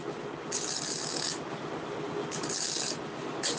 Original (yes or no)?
yes